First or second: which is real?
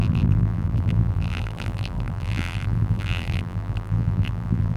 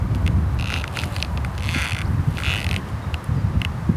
second